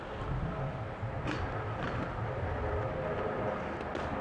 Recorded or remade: recorded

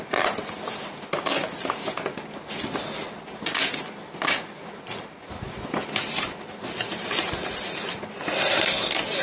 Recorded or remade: recorded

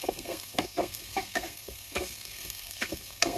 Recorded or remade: remade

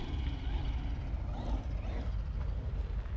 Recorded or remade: recorded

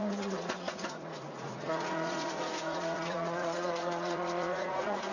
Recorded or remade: remade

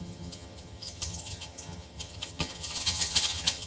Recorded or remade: remade